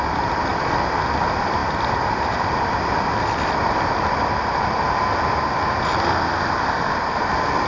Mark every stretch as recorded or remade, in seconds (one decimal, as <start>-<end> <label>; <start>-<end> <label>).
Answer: 0.0-7.7 recorded